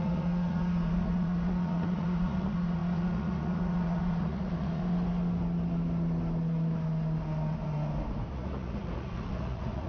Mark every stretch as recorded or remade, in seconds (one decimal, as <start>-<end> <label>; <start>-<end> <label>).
0.0-4.8 remade; 4.8-8.3 recorded; 8.3-9.9 remade